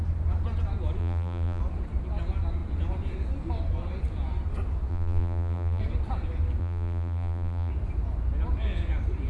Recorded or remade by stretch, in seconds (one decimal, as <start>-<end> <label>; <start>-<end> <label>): 0.0-1.0 recorded; 1.0-1.6 remade; 1.6-4.9 recorded; 4.9-5.8 remade; 5.8-6.6 recorded; 6.6-7.7 remade; 7.7-9.3 recorded